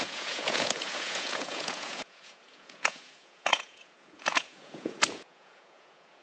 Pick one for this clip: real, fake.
fake